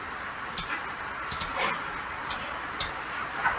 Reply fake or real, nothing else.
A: real